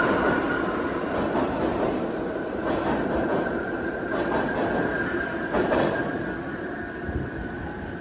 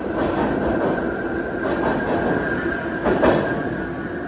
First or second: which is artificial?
first